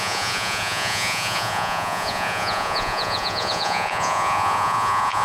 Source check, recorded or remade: remade